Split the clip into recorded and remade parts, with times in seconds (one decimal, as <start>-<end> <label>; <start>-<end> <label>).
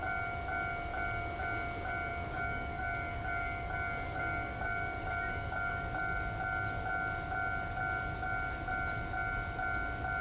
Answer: 0.0-2.1 recorded; 2.1-5.7 remade; 5.7-10.2 recorded